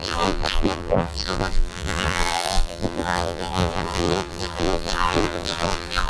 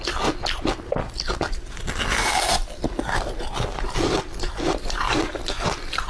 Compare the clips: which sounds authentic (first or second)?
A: second